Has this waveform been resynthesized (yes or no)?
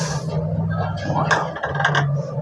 no